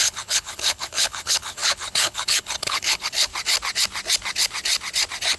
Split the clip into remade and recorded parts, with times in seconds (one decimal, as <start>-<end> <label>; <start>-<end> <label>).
0.0-3.3 remade; 3.3-5.4 recorded